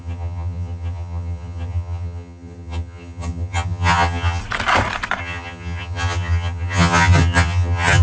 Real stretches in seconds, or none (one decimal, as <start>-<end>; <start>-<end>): 4.4-5.2